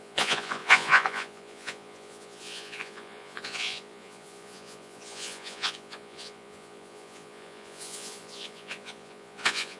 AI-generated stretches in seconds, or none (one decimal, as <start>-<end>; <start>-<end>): 0.0-9.8